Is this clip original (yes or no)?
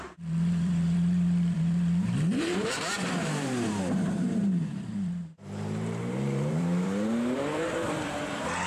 no